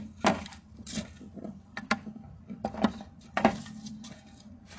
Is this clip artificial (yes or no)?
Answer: no